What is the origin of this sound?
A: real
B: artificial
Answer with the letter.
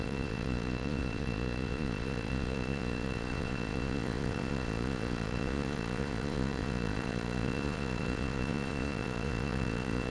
B